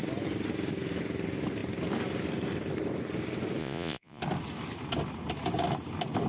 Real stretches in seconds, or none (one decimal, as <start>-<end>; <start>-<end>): 0.0-3.6; 4.2-6.3